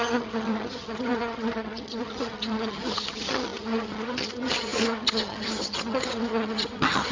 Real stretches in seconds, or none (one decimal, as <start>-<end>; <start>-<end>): none